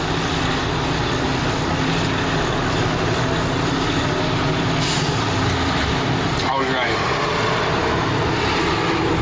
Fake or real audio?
real